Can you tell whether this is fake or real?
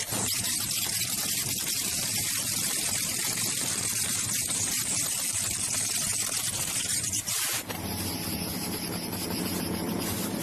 fake